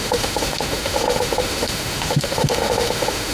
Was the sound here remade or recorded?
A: remade